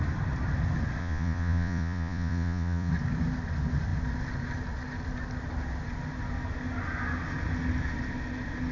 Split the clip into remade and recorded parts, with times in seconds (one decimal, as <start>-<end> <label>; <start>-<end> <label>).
0.0-1.0 recorded; 1.0-2.9 remade; 2.9-8.7 recorded